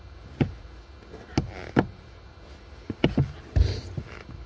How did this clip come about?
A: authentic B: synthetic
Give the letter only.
A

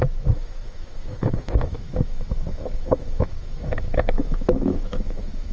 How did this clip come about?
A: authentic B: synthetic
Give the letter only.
B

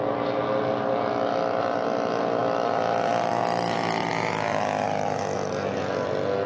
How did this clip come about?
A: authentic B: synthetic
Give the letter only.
A